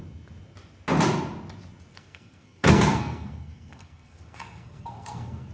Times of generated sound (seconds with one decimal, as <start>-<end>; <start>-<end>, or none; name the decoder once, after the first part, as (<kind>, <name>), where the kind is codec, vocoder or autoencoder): 1.9-5.5 (codec, SNAC)